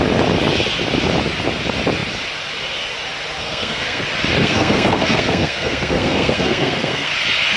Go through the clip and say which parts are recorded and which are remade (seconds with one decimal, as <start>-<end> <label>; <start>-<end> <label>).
0.0-3.4 recorded; 3.4-4.0 remade; 4.0-4.4 recorded; 4.4-7.1 remade; 7.1-7.6 recorded